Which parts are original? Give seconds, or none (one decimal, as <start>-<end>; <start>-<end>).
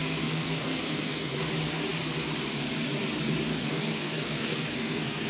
1.3-3.6